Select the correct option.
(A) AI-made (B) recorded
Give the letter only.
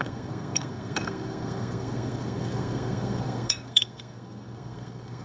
A